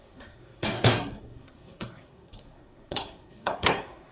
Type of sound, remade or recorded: remade